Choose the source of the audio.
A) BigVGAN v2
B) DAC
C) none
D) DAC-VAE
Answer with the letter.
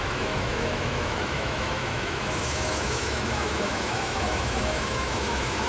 D